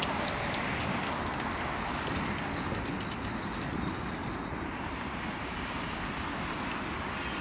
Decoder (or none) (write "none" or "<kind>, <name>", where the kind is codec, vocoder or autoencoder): none